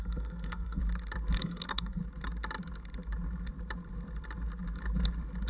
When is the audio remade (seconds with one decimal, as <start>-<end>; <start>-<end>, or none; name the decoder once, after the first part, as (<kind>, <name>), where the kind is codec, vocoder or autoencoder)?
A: 0.0-0.8 (codec, SNAC); 1.4-2.0

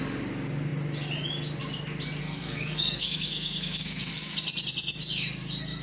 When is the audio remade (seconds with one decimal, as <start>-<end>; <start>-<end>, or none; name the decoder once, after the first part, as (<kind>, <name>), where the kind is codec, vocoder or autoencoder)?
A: 2.2-4.1 (codec, SNAC)

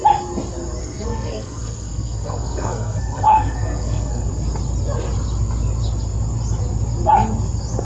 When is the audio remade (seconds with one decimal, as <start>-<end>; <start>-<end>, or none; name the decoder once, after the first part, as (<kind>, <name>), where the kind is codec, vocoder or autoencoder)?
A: 0.8-4.3 (codec, SNAC)

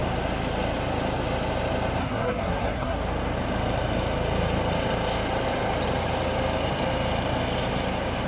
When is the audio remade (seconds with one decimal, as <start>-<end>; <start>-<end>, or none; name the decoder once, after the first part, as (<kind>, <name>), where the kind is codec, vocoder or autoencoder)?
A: 2.0-3.0 (codec, SNAC)

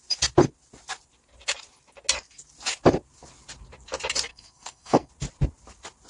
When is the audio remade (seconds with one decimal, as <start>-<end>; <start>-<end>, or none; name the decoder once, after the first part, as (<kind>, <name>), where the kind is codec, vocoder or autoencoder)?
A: 4.3-5.1 (codec, SNAC)

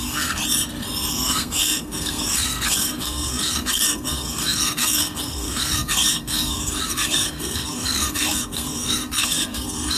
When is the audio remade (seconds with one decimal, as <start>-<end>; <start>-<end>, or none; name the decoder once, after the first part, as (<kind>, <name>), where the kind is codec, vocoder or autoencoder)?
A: 0.0-0.4 (codec, SNAC); 1.1-10.0

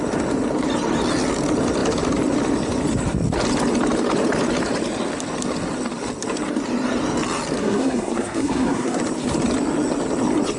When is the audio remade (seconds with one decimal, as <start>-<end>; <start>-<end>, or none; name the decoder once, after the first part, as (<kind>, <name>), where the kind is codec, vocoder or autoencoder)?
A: 7.6-9.0 (codec, SNAC)

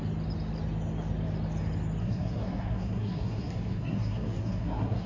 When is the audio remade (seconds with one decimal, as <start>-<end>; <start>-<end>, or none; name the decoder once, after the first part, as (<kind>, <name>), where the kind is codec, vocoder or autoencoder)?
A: 2.0-5.1 (codec, SNAC)